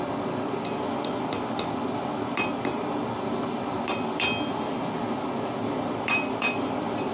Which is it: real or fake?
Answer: real